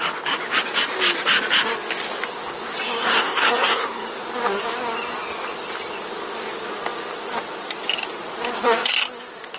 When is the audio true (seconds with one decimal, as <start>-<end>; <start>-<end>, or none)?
0.0-3.1; 4.1-9.6